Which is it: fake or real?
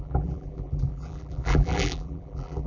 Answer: fake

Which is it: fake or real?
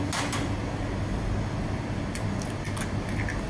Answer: real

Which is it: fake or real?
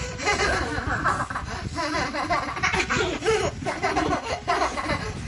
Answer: fake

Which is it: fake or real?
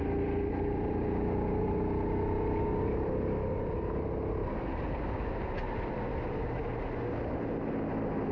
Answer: real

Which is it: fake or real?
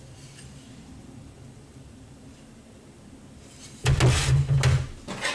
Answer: real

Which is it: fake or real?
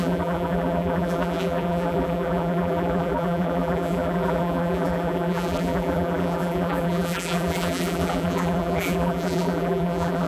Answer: fake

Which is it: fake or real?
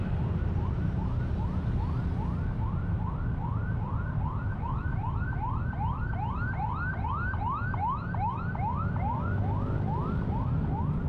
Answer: real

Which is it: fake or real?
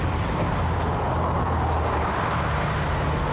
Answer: real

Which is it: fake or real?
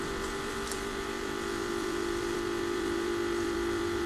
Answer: fake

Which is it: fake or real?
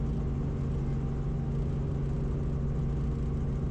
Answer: real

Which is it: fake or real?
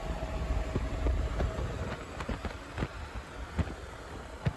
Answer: real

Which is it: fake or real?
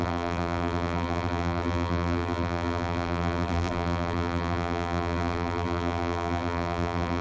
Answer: fake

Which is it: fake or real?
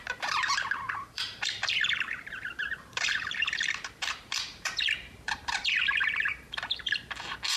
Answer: fake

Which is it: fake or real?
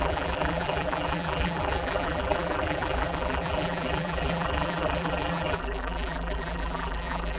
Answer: fake